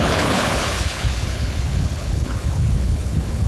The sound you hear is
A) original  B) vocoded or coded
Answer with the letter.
B